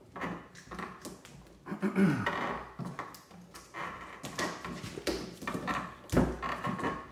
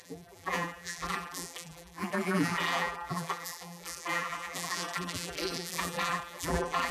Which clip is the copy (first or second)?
second